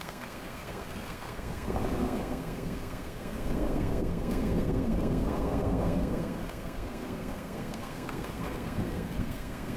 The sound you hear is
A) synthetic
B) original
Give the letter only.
A